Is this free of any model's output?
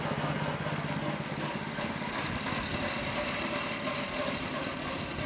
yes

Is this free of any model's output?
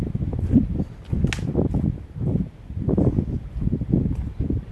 yes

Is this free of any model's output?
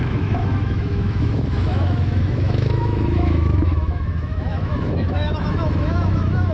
no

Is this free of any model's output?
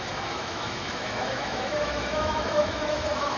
no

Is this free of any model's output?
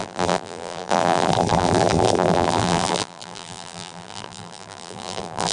no